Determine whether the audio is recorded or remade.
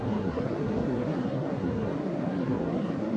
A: remade